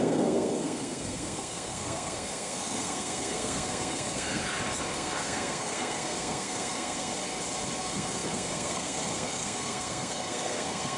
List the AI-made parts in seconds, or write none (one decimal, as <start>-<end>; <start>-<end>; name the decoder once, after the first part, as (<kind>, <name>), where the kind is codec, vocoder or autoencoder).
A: 0.0-4.4 (codec, SNAC); 4.9-7.1; 7.8-11.0

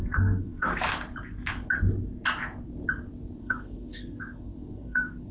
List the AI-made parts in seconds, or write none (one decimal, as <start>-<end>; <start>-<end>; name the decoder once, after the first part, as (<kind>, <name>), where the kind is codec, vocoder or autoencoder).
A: 0.0-0.7 (codec, SNAC); 3.4-5.3

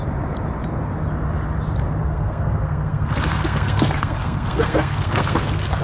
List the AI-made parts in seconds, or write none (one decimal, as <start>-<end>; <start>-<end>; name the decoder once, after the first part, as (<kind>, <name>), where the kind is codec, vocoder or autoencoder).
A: 2.0-5.8 (codec, SNAC)